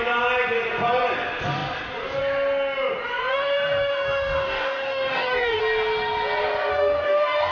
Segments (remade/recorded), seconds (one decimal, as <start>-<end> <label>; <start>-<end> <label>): 0.0-3.3 recorded; 3.3-5.6 remade; 5.6-6.7 recorded; 6.7-7.5 remade